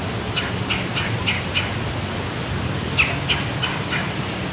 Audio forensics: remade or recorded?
recorded